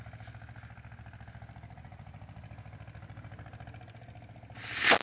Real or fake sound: real